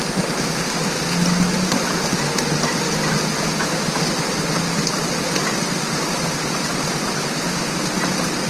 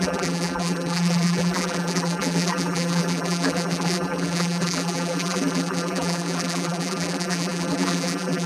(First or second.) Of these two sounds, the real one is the first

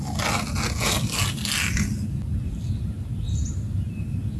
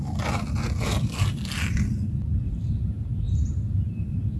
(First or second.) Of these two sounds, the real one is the first